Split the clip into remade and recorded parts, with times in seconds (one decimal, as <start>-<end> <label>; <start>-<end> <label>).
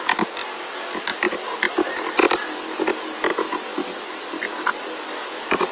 0.0-2.2 recorded; 2.2-2.8 remade; 2.8-3.3 recorded; 3.3-4.8 remade; 4.8-5.7 recorded